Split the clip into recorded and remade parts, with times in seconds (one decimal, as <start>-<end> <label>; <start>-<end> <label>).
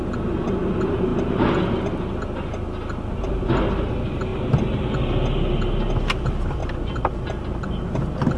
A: 0.0-8.4 recorded